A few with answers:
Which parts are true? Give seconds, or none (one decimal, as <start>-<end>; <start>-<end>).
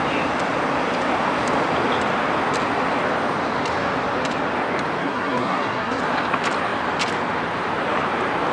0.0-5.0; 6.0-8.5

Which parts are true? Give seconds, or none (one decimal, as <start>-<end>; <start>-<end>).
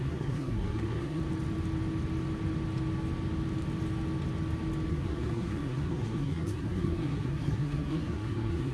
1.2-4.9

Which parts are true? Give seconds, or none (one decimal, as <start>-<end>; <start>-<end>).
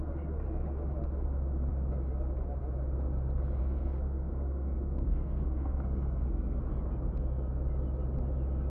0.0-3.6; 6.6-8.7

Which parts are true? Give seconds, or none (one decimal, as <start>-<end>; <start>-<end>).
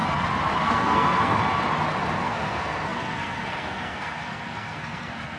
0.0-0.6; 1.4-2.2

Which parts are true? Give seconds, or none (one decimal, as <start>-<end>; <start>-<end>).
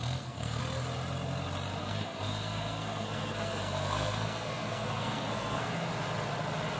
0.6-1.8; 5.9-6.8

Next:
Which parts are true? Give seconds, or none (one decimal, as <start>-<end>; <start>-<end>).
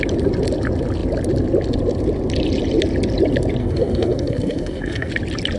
0.0-3.6; 5.1-5.6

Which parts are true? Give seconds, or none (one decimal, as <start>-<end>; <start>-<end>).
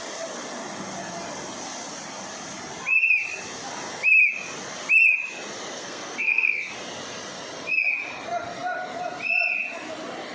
0.0-5.8; 6.7-10.3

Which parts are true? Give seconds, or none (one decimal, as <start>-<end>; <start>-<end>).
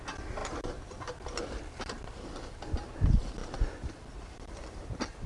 0.0-5.3